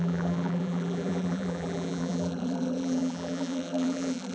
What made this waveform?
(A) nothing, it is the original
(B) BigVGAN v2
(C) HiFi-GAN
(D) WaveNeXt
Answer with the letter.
B